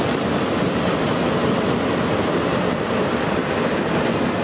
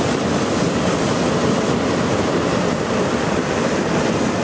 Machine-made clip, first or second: second